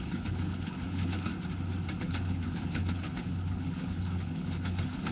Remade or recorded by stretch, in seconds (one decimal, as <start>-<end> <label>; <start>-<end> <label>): 0.0-1.3 remade; 1.3-2.0 recorded; 2.0-5.1 remade